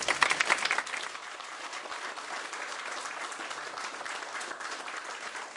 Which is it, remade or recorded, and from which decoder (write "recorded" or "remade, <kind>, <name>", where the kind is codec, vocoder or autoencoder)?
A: recorded